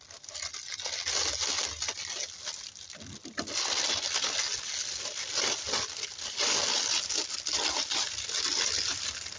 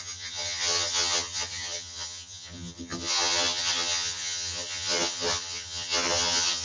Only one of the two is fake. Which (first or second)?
second